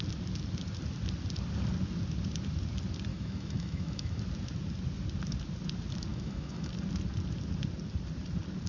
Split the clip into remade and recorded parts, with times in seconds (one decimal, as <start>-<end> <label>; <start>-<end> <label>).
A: 0.0-3.1 recorded; 3.1-4.2 remade; 4.2-6.1 recorded; 6.1-6.7 remade; 6.7-8.7 recorded